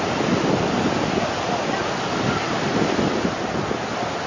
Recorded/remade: recorded